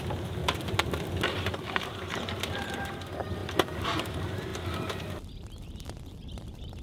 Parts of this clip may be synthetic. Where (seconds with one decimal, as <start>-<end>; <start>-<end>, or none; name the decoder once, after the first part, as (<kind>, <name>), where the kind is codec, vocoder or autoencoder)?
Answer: 0.0-0.4 (vocoder, BigVGAN v2); 1.3-3.4; 4.0-4.5; 5.2-6.8